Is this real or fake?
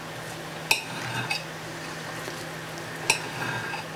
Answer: real